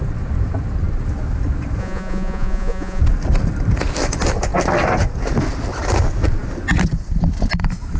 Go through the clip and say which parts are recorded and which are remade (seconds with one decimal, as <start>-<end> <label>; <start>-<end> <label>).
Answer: 0.0-1.8 recorded; 1.8-3.0 remade; 3.0-8.0 recorded